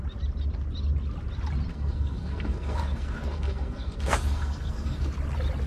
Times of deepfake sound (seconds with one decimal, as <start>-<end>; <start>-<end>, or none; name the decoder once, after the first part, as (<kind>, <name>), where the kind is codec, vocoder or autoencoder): 1.7-5.1 (codec, SNAC)